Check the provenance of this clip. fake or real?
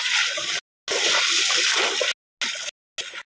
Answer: real